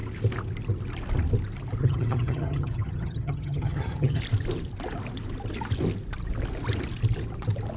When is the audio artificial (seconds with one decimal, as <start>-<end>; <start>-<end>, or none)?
1.8-4.2